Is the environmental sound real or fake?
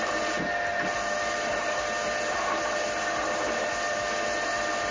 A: fake